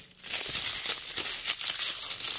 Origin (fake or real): real